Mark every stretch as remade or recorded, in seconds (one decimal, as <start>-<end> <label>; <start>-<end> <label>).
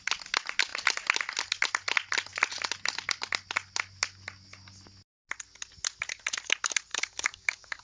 0.0-6.9 recorded; 6.9-7.8 remade